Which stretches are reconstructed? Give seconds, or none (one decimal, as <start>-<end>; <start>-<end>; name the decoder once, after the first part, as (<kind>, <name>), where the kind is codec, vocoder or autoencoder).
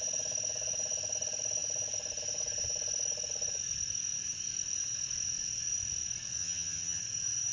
6.4-7.0 (vocoder, HiFi-GAN)